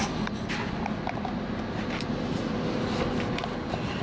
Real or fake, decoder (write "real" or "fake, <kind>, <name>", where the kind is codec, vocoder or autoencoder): real